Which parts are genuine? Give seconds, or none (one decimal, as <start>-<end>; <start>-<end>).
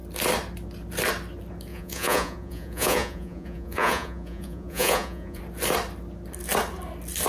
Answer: 0.0-1.7; 5.4-7.3